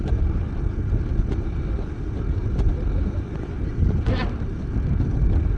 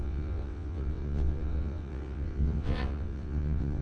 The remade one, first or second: second